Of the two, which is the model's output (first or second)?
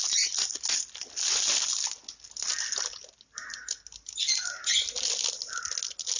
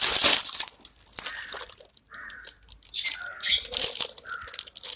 second